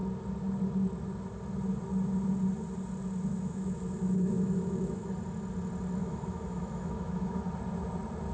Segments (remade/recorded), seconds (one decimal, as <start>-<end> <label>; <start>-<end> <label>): 0.0-3.3 recorded; 3.3-5.1 remade; 5.1-6.0 recorded; 6.0-7.5 remade; 7.5-8.3 recorded